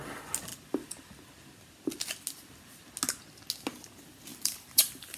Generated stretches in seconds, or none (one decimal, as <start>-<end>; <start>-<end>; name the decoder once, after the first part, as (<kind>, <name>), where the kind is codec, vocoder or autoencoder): 4.3-5.2 (vocoder, BigVGAN v2)